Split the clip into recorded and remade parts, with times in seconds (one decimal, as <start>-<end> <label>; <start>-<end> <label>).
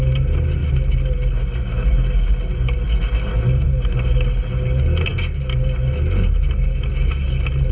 0.0-7.7 recorded